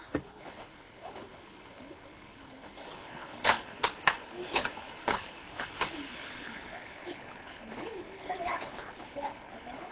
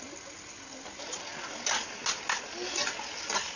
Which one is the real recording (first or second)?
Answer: second